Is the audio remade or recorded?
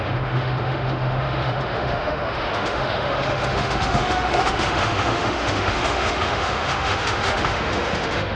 remade